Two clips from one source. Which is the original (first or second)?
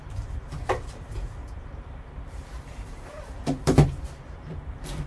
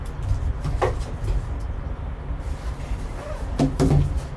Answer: second